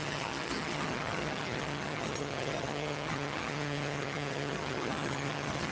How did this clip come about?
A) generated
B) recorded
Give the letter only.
A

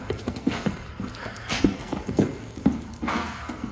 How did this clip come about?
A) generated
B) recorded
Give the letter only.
A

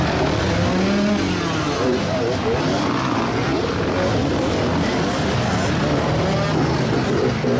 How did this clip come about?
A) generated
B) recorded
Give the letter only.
B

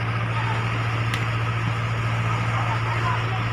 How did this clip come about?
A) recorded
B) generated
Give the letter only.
A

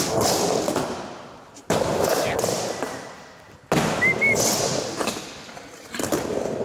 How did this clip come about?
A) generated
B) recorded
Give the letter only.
B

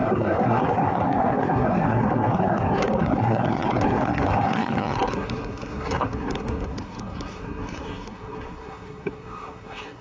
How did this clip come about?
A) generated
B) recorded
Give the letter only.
A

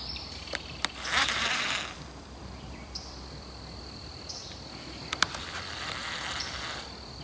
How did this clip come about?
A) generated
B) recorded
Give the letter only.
A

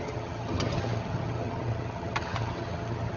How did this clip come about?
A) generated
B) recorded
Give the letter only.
A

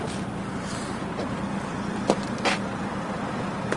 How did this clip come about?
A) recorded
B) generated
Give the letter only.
A